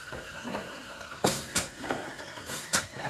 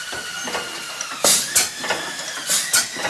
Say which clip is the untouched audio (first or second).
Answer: second